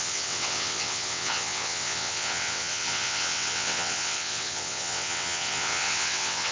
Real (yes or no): no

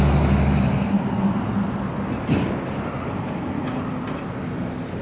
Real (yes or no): yes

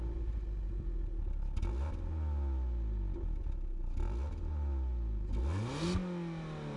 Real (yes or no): yes